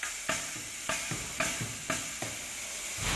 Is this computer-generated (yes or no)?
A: no